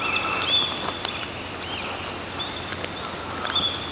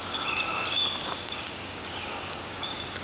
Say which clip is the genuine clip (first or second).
first